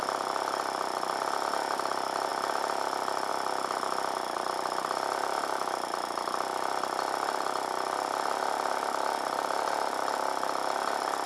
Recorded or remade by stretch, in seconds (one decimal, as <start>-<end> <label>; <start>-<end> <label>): 0.0-11.3 recorded

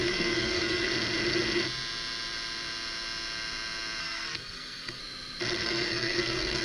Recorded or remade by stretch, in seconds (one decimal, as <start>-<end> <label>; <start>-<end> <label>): 0.0-0.9 remade; 0.9-4.0 recorded; 4.0-5.0 remade; 5.0-5.6 recorded; 5.6-6.6 remade